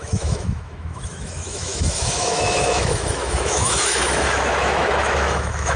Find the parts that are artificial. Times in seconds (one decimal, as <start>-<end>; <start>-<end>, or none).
0.0-5.8